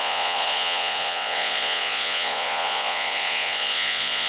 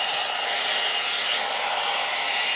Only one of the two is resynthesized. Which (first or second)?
first